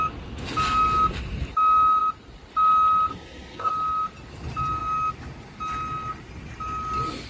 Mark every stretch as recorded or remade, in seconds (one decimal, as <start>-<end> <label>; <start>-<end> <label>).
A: 0.0-3.1 recorded; 3.1-3.7 remade; 3.7-7.3 recorded